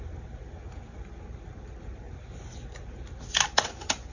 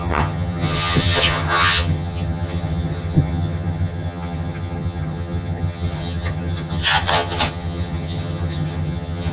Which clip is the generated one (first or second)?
second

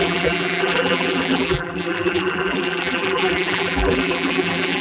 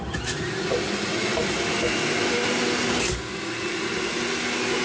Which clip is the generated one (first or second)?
first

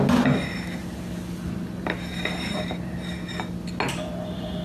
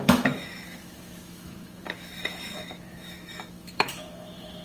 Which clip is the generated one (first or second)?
second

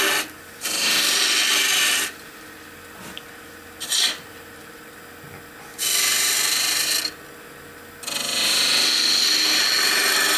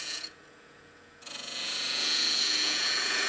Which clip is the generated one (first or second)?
second